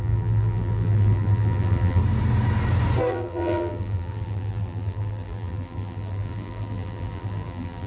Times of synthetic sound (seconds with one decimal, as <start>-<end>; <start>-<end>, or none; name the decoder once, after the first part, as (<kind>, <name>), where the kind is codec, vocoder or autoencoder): 0.0-2.0 (vocoder, BigVGAN v2); 3.1-7.9